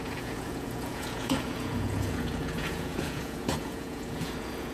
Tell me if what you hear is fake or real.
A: fake